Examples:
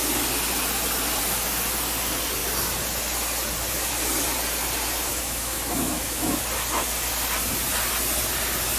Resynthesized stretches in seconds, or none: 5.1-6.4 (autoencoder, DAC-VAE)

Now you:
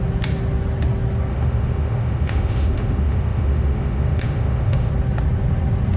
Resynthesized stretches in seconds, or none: 1.3-4.9 (autoencoder, DAC-VAE)

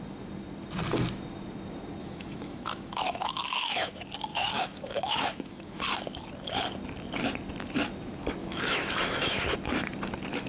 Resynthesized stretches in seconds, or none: 2.0-3.9 (autoencoder, DAC-VAE); 4.3-5.8; 8.4-9.3

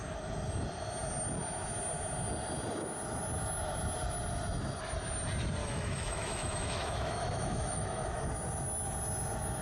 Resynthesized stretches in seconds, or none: 5.6-8.3 (autoencoder, DAC-VAE)

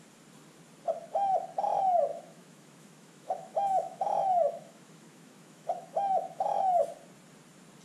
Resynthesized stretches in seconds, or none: 2.1-6.8 (autoencoder, DAC-VAE)

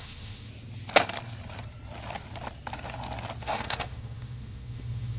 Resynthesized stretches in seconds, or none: 0.0-0.5 (autoencoder, DAC-VAE); 3.4-5.2

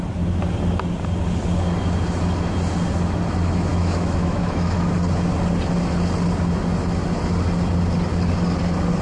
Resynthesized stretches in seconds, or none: 3.7-4.9 (autoencoder, DAC-VAE)

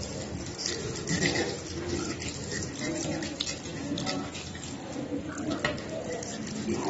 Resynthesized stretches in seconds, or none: none